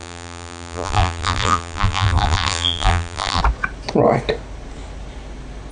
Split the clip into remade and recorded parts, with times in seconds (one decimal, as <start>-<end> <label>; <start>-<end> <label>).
0.0-3.4 remade; 3.4-5.7 recorded